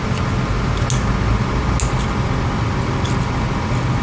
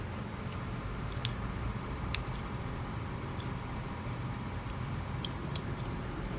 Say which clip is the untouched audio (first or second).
first